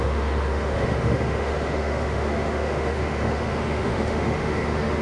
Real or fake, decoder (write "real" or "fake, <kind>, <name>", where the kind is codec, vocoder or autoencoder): fake, autoencoder, DAC-VAE